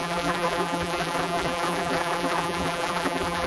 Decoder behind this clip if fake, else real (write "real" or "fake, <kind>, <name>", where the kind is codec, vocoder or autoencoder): fake, vocoder, BigVGAN v2